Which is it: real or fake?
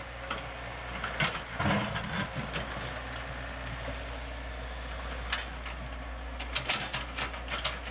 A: real